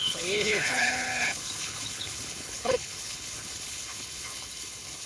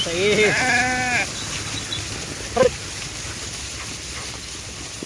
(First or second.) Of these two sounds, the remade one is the first